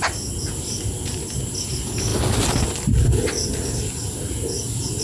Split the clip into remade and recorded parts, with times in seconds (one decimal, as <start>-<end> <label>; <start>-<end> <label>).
0.0-5.0 recorded